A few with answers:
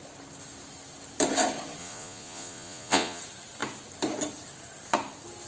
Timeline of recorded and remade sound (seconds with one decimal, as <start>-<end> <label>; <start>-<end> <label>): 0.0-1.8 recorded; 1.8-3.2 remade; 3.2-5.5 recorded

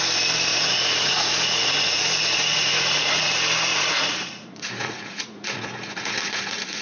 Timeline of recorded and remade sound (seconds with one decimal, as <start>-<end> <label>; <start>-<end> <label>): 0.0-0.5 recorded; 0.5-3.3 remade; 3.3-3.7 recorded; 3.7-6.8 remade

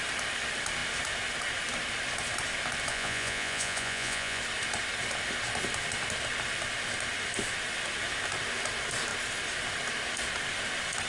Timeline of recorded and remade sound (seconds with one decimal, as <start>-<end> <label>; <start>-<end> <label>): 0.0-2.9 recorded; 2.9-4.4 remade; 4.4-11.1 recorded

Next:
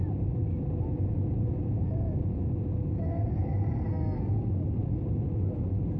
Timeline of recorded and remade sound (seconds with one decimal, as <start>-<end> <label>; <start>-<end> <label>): 0.0-0.9 recorded; 0.9-2.4 remade; 2.4-6.0 recorded

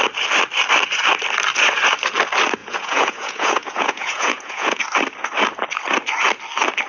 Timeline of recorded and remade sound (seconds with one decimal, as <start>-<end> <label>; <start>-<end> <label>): 0.0-2.6 recorded; 2.6-4.8 remade; 4.8-6.9 recorded

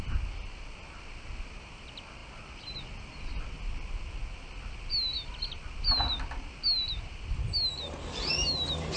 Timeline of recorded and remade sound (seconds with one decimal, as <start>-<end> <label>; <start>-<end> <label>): 0.0-9.0 recorded

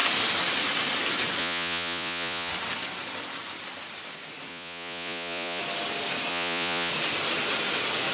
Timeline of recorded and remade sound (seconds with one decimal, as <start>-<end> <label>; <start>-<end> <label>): 0.0-1.4 recorded; 1.4-2.5 remade; 2.5-4.5 recorded; 4.5-5.6 remade; 5.6-6.3 recorded; 6.3-6.9 remade; 6.9-8.1 recorded

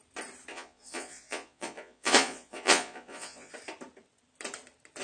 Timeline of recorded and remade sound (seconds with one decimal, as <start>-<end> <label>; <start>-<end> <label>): 0.0-0.5 recorded; 0.5-3.5 remade; 3.5-5.0 recorded